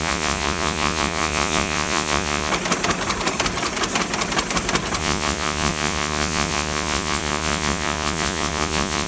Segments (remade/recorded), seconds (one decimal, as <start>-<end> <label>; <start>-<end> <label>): 0.0-2.5 remade; 2.5-5.0 recorded; 5.0-9.1 remade